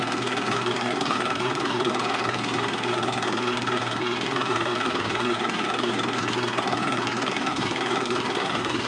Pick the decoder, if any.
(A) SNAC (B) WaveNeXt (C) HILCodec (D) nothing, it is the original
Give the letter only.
A